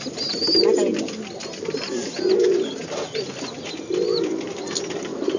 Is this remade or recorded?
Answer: recorded